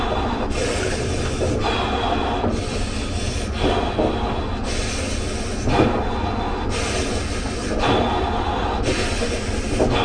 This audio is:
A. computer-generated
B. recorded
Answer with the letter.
B